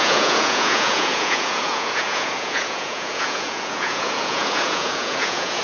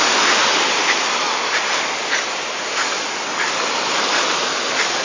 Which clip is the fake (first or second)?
first